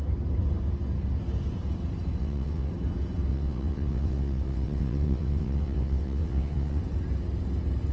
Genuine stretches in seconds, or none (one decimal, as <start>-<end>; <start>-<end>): 0.0-2.2; 2.7-3.3; 6.8-7.9